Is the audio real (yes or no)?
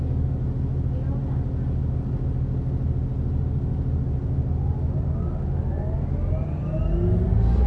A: yes